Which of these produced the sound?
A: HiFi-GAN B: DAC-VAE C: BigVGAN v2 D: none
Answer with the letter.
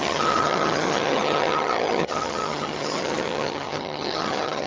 A